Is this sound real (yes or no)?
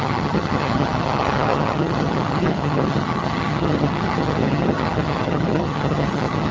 no